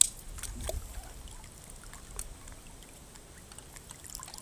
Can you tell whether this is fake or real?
real